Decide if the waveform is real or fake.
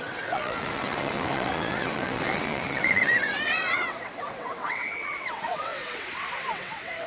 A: fake